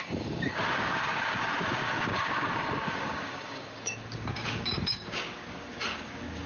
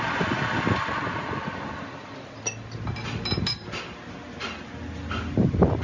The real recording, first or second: second